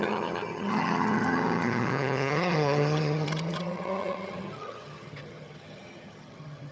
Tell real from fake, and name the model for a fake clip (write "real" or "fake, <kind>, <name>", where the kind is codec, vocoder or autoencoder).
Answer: fake, vocoder, HiFi-GAN